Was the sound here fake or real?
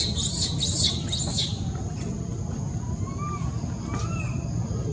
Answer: real